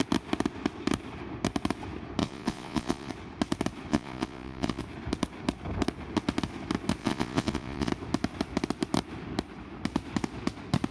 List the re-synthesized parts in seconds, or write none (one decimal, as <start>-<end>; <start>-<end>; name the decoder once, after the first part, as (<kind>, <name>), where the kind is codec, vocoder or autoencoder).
2.2-3.1 (vocoder, Vocos); 3.9-4.8; 7.0-7.9